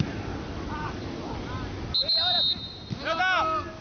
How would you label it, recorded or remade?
recorded